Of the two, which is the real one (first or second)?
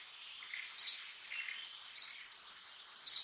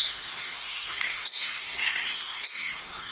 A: first